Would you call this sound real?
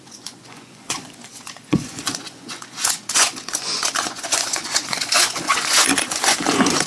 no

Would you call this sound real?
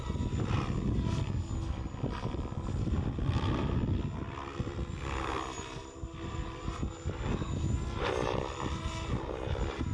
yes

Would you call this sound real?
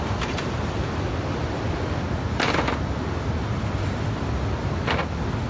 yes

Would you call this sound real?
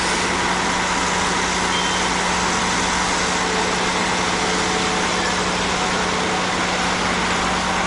yes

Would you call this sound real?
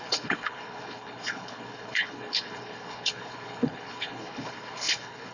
no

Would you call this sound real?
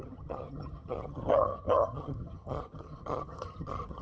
no